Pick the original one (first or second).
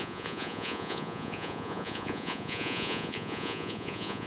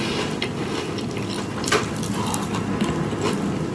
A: second